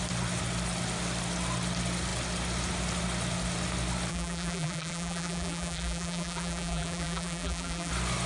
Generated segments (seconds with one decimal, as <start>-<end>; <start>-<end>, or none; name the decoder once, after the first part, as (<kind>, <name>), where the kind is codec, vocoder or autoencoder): 4.1-7.9 (vocoder, BigVGAN v2)